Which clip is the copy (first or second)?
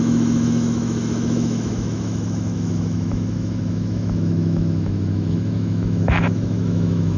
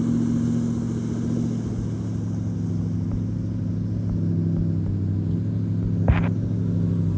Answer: first